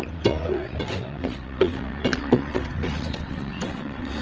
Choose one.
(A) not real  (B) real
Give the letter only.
A